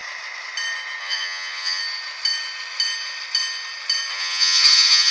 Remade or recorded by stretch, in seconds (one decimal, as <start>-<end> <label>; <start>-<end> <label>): 0.0-1.0 recorded; 1.0-1.8 remade; 1.8-4.1 recorded; 4.1-5.1 remade